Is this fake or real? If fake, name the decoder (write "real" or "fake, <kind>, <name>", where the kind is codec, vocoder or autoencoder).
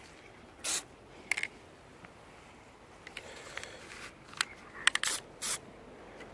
real